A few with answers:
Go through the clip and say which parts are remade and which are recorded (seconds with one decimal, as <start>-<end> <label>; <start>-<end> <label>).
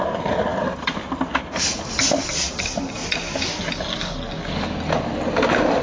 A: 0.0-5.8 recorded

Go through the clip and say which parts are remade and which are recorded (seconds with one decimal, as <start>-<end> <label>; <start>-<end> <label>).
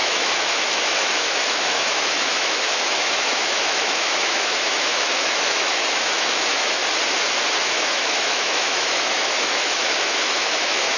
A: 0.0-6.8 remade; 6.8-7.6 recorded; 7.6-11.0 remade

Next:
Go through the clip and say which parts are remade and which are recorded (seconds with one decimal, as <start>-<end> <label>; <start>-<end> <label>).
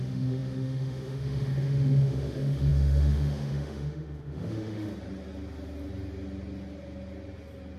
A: 0.0-4.9 remade; 4.9-7.8 recorded